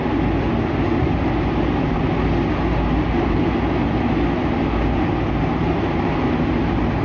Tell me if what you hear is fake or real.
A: real